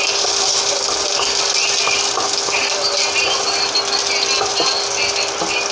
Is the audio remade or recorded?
recorded